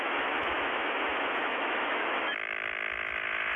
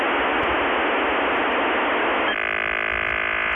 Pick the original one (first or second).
second